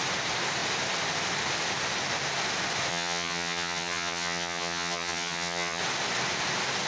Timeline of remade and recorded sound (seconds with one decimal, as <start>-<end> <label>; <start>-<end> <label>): 0.0-2.9 recorded; 2.9-5.8 remade; 5.8-6.9 recorded